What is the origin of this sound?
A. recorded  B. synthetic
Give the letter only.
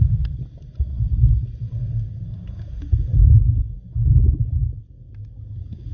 A